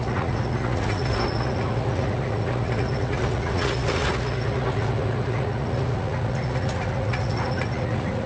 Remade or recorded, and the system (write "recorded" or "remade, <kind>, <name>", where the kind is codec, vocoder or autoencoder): remade, vocoder, Vocos